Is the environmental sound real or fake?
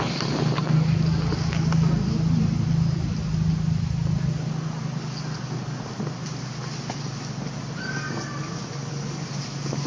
real